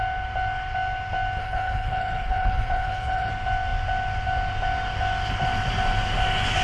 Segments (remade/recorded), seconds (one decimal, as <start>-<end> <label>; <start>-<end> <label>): 0.0-1.4 recorded; 1.4-3.3 remade; 3.3-6.6 recorded